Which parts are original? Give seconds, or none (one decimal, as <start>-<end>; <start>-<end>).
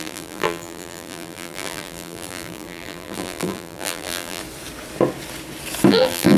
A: 4.4-5.9